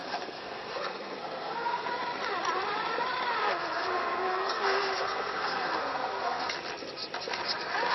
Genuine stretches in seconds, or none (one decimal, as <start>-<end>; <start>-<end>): 1.9-3.4; 6.4-7.9